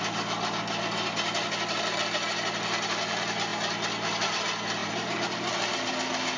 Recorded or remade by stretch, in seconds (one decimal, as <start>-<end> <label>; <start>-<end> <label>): 0.0-4.8 recorded; 4.8-5.7 remade; 5.7-6.4 recorded